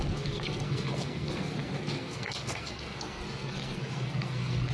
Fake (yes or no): yes